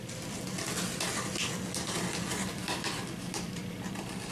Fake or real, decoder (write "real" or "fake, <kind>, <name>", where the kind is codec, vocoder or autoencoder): real